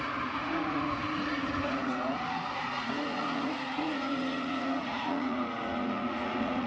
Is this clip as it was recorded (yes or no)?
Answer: no